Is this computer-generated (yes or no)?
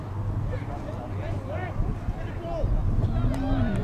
no